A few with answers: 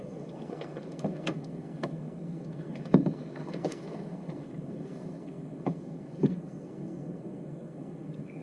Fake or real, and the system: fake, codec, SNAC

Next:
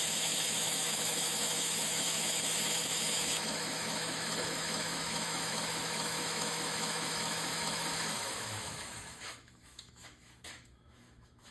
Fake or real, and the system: fake, autoencoder, DAC-VAE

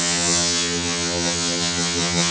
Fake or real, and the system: fake, vocoder, HiFi-GAN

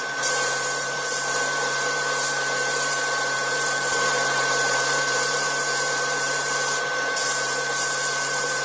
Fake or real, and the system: fake, vocoder, BigVGAN v2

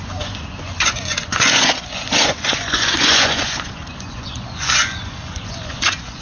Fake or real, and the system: fake, vocoder, Vocos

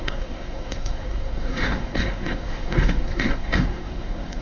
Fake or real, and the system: fake, codec, SNAC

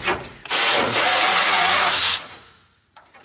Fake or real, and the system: fake, vocoder, Vocos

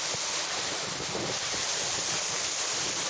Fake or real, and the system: real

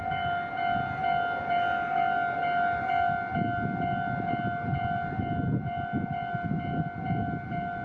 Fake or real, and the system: real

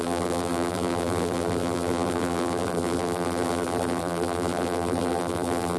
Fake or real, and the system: fake, vocoder, BigVGAN v2